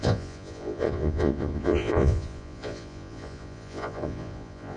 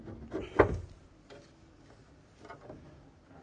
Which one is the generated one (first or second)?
first